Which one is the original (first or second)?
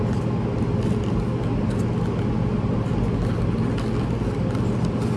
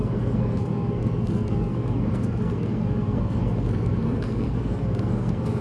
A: first